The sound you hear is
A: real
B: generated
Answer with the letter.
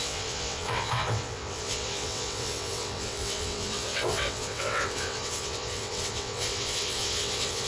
B